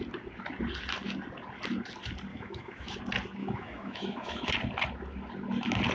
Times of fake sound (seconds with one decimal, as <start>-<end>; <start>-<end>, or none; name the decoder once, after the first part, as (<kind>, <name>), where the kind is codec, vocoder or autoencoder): 2.3-3.0 (autoencoder, DAC-VAE); 3.4-4.5